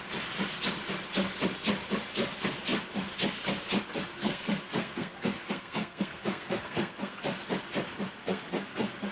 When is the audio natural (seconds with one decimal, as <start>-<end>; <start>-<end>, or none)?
0.0-4.2; 7.2-8.2

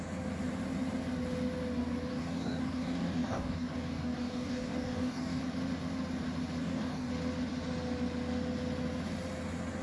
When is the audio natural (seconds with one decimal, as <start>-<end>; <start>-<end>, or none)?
0.0-2.1; 5.4-6.6; 7.1-9.8

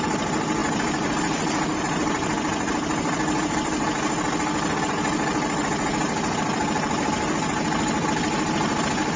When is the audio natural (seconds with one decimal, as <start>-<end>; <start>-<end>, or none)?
0.0-9.2

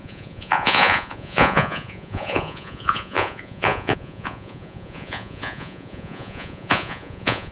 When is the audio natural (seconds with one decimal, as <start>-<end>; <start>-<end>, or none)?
none

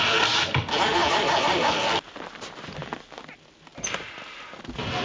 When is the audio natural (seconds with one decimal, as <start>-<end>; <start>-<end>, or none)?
0.0-5.0

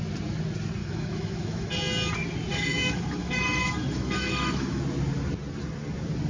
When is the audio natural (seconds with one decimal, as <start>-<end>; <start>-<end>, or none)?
0.0-0.8; 1.7-2.5; 4.8-6.3

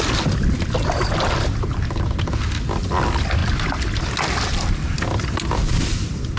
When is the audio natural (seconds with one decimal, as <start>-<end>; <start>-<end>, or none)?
0.0-6.4